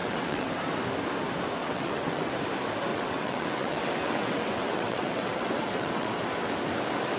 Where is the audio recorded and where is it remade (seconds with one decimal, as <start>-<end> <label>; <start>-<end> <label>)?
0.0-0.5 remade; 0.5-1.6 recorded; 1.6-2.3 remade; 2.3-2.9 recorded; 2.9-6.2 remade; 6.2-7.2 recorded